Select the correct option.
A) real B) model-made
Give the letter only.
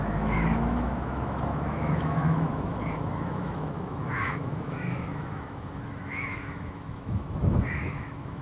B